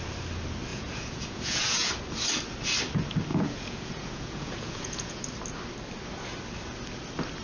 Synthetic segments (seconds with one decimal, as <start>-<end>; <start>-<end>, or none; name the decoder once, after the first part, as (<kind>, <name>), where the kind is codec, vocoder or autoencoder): 0.7-1.9 (vocoder, Vocos); 3.3-5.2